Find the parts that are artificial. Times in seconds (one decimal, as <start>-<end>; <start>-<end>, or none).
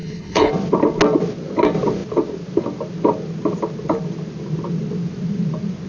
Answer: 0.0-0.5